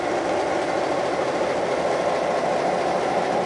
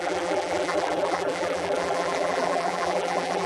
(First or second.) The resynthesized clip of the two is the second